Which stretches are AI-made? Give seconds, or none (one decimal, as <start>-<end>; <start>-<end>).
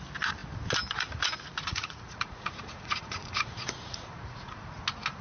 1.7-4.8